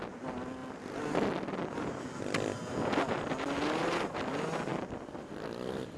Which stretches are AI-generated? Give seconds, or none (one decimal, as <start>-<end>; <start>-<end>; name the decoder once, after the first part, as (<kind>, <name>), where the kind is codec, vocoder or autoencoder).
none